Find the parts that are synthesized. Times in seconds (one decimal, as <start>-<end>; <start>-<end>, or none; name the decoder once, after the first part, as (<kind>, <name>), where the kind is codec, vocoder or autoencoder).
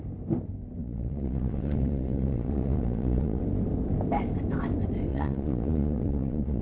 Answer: 0.8-3.4 (vocoder, Vocos); 5.1-6.6